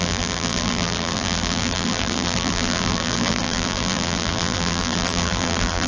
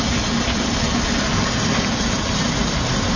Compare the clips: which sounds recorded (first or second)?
second